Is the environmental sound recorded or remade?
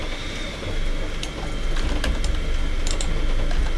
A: recorded